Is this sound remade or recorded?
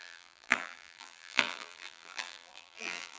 remade